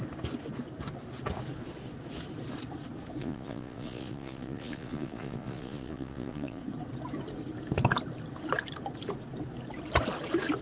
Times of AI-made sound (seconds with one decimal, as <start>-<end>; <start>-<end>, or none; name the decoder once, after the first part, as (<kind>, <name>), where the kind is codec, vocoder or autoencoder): 3.2-6.6 (vocoder, Vocos)

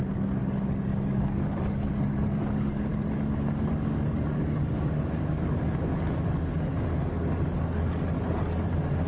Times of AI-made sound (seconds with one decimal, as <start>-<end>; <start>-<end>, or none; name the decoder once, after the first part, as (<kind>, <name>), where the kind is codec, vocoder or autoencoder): 0.0-2.9 (codec, DAC); 3.7-9.1

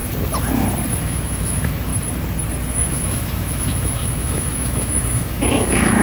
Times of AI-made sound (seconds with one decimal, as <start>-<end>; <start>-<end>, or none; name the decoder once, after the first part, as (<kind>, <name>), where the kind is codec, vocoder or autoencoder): 1.0-1.9 (autoencoder, DAC-VAE); 2.7-6.0

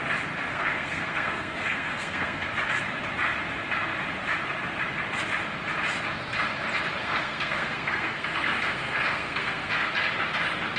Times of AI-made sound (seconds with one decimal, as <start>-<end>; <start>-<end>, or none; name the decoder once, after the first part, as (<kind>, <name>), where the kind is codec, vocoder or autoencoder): 0.5-2.4 (codec, SNAC); 7.0-9.9

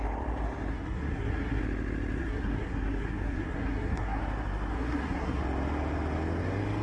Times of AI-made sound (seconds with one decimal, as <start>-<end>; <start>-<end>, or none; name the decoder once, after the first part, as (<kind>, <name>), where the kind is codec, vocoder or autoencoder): 0.7-1.6 (codec, SNAC); 2.2-4.2; 4.7-5.4

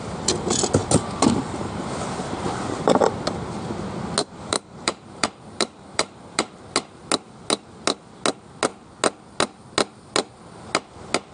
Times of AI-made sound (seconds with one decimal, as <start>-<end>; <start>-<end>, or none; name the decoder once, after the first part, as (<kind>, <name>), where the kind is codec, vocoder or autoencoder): 0.8-1.3 (vocoder, BigVGAN v2); 4.2-6.5

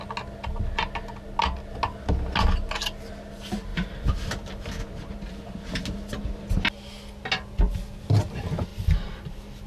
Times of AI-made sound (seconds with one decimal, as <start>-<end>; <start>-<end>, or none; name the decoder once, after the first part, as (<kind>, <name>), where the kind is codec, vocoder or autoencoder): 3.7-4.8 (vocoder, BigVGAN v2); 8.7-9.7

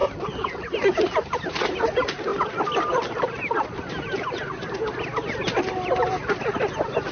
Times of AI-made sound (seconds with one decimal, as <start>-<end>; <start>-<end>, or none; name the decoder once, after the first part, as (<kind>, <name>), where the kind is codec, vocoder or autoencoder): 0.0-7.1 (vocoder, BigVGAN v2)